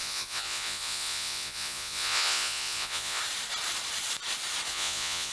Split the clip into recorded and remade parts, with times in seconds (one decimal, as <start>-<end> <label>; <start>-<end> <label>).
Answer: 0.0-3.2 remade; 3.2-4.7 recorded; 4.7-5.3 remade